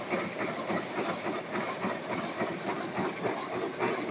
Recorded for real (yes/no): yes